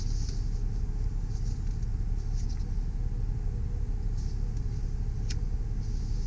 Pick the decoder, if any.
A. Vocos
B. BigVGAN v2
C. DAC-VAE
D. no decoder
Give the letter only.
D